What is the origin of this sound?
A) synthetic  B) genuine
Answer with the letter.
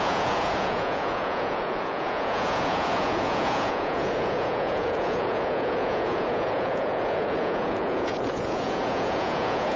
A